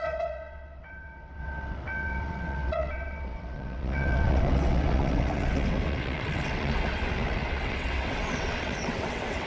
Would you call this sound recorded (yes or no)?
no